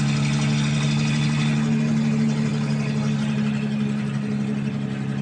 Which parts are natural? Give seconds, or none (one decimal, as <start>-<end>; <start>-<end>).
0.0-5.2